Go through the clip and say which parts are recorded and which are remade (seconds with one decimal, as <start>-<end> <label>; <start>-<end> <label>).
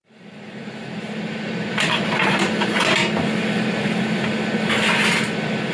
0.0-2.8 remade; 2.8-5.7 recorded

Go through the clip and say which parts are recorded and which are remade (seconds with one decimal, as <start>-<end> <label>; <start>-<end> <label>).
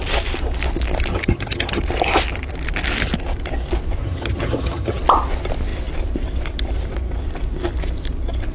0.0-1.1 recorded; 1.1-1.8 remade; 1.8-4.0 recorded; 4.0-5.0 remade; 5.0-8.5 recorded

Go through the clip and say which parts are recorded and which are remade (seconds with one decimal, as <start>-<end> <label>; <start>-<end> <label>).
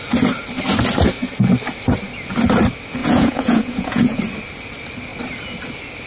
0.0-3.0 recorded; 3.0-4.2 remade; 4.2-6.1 recorded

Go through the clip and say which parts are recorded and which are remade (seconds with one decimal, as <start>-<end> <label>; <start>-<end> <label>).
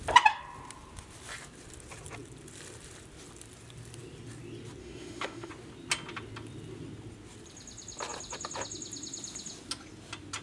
0.0-4.8 recorded; 4.8-5.5 remade; 5.5-10.4 recorded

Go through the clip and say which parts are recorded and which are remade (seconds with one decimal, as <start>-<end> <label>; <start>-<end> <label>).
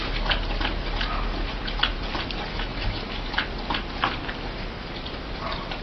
0.0-2.5 recorded; 2.5-3.3 remade; 3.3-5.8 recorded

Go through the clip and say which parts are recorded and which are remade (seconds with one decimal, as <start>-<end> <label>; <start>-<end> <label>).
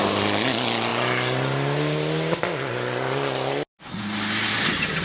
0.0-5.0 recorded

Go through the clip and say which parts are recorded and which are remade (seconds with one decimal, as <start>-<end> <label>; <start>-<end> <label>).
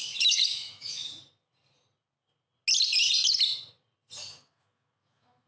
0.0-1.2 remade; 1.2-4.3 recorded; 4.3-5.5 remade